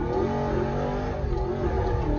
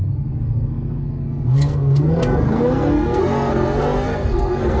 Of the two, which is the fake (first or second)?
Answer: second